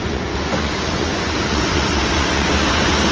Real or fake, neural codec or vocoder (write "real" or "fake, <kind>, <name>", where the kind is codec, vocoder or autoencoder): fake, vocoder, Vocos